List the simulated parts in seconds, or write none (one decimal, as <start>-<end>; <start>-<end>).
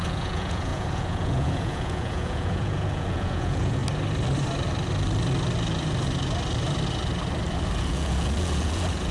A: 0.0-3.8; 7.8-9.1